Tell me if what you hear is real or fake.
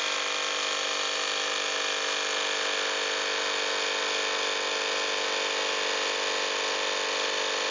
real